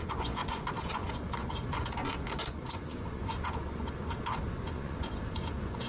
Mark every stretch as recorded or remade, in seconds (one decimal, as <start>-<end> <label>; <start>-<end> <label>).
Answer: 0.0-5.9 remade